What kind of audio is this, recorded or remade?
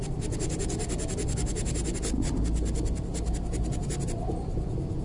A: recorded